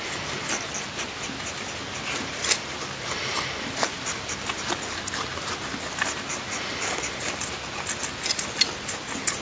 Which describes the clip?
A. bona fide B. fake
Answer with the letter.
A